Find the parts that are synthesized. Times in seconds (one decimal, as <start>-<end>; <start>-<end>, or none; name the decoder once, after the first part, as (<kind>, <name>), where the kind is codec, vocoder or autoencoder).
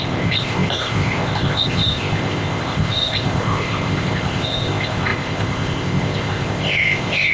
0.0-7.3 (codec, ZipCodec)